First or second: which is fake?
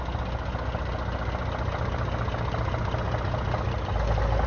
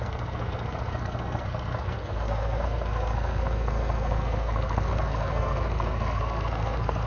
second